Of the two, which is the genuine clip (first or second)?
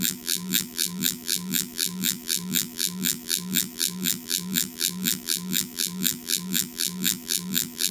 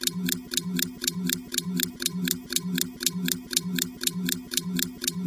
second